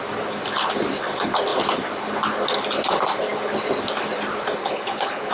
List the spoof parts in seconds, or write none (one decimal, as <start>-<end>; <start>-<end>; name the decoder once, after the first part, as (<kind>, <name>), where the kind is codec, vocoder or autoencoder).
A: 4.6-5.3 (codec, HILCodec)